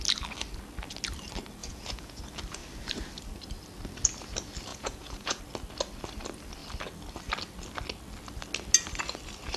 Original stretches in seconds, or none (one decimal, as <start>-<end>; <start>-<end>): 0.0-1.6; 2.2-4.7; 5.4-9.6